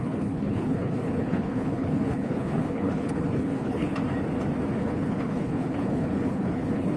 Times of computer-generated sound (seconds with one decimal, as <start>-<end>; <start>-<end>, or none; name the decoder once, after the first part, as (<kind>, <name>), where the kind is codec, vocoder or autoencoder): 0.0-4.0 (codec, HILCodec); 4.8-7.0